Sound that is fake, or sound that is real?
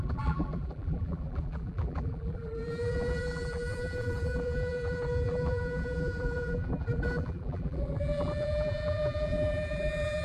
fake